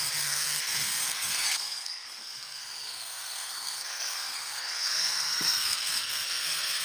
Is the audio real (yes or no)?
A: no